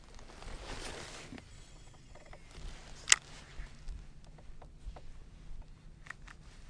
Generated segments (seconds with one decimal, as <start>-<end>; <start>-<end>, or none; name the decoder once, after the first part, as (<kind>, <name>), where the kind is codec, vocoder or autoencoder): 1.5-2.3 (vocoder, WaveNeXt)